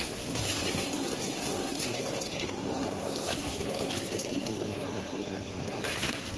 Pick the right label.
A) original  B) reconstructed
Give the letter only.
B